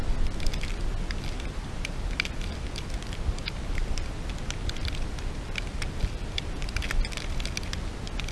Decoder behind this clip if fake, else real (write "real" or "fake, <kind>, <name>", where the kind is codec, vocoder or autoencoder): real